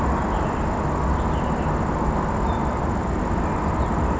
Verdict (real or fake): real